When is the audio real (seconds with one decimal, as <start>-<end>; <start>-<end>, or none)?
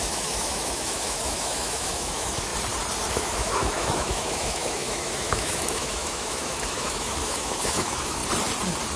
2.5-3.1; 8.2-9.0